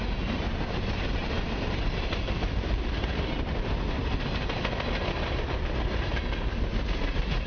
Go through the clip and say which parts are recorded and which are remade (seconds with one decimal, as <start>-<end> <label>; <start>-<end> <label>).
0.0-4.0 remade; 4.0-7.0 recorded; 7.0-7.5 remade